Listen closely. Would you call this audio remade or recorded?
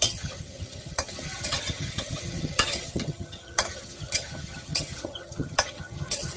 remade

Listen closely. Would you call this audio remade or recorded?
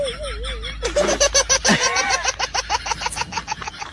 recorded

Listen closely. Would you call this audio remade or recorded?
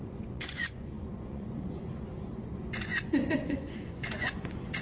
remade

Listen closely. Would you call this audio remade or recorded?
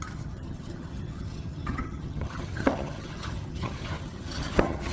remade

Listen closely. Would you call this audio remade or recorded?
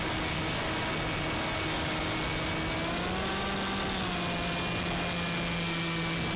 recorded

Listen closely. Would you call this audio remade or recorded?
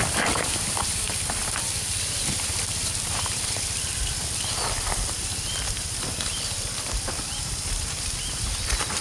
remade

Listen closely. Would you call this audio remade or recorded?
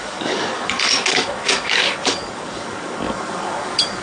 remade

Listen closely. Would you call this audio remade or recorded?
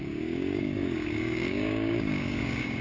remade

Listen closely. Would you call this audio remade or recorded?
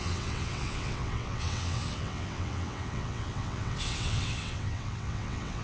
remade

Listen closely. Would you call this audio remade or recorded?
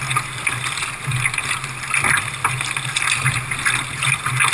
recorded